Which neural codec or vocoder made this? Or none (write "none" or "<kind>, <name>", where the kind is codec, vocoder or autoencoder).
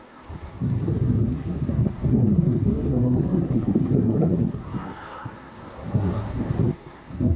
codec, SNAC